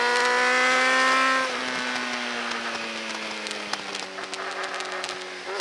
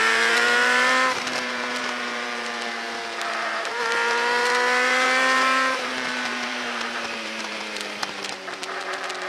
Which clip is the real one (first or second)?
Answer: first